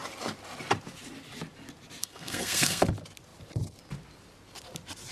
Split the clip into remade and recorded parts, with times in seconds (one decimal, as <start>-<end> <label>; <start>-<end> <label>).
0.0-2.0 recorded; 2.0-2.8 remade; 2.8-5.1 recorded